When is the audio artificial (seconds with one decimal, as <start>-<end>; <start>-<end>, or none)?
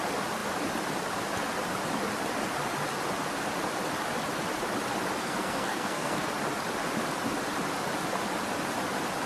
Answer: 5.2-6.3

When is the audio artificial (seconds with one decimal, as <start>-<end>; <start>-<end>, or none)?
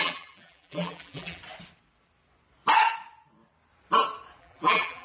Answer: 0.0-1.4; 4.4-5.0